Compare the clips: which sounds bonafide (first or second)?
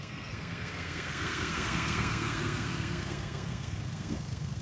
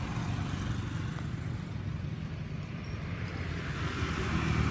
second